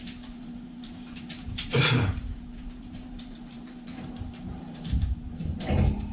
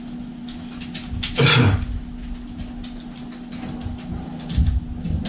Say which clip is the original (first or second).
second